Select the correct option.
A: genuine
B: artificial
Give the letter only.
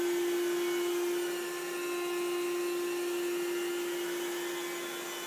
A